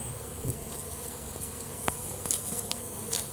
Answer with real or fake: fake